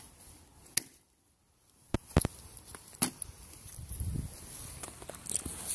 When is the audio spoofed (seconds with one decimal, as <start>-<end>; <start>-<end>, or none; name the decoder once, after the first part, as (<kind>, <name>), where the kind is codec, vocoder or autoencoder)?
none